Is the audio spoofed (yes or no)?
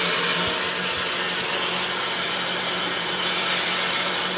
no